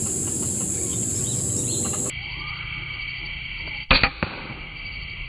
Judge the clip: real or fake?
real